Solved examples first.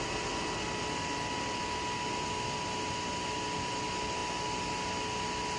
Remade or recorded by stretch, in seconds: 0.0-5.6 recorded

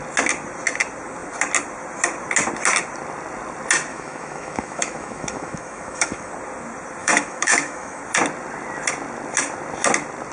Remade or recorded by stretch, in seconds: 0.0-3.9 recorded; 3.9-6.3 remade; 6.3-7.0 recorded; 7.0-8.0 remade; 8.0-10.3 recorded

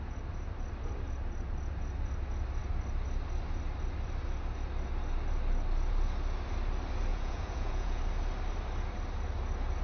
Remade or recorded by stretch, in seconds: 0.0-7.1 recorded; 7.1-8.0 remade; 8.0-9.8 recorded

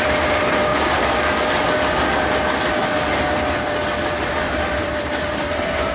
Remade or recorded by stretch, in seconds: 0.0-0.7 remade; 0.7-4.2 recorded; 4.2-5.9 remade

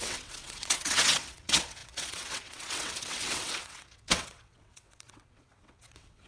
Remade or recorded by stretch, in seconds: 0.0-6.3 remade

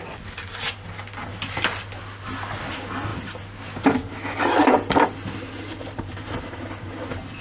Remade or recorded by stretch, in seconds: 0.0-7.4 recorded

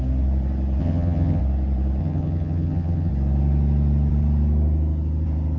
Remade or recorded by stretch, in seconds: 0.0-0.8 recorded; 0.8-1.4 remade; 1.4-2.0 recorded; 2.0-3.1 remade; 3.1-5.6 recorded